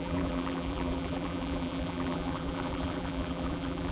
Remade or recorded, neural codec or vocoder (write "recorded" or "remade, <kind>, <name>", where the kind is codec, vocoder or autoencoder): remade, vocoder, BigVGAN v2